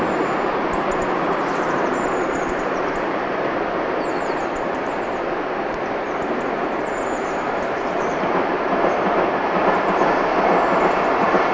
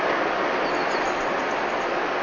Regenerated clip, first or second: first